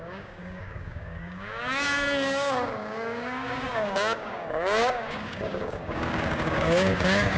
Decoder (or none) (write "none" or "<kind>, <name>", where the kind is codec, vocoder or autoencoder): codec, DAC